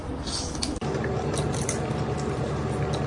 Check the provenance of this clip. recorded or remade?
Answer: recorded